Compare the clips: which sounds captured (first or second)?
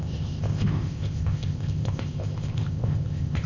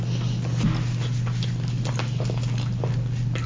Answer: second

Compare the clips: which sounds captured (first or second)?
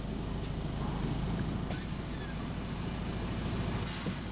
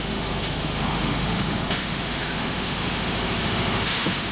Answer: first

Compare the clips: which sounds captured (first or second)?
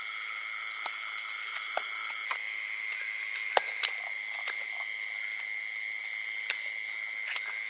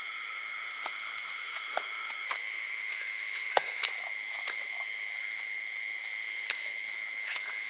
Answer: first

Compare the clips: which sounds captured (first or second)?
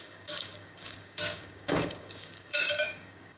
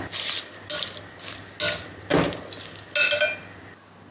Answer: second